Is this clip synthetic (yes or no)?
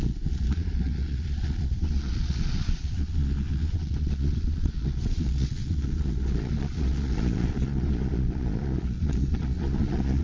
yes